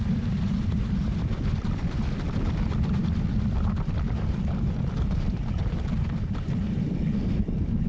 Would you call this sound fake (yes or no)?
yes